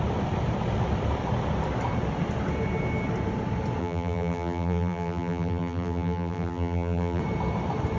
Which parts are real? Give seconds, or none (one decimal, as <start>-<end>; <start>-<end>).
0.0-3.8; 7.2-8.0